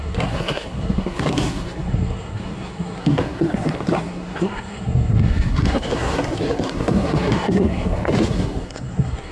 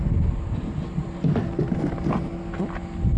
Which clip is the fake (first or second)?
first